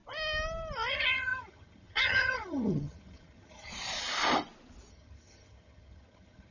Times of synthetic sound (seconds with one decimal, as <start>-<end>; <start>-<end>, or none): 0.9-3.7; 4.9-6.5